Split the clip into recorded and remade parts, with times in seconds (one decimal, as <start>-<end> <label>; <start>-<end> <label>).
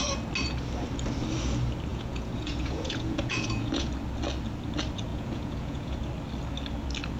0.0-1.9 recorded; 1.9-3.9 remade; 3.9-5.1 recorded; 5.1-6.0 remade; 6.0-7.2 recorded